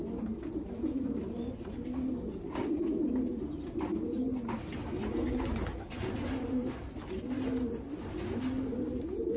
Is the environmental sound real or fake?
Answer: real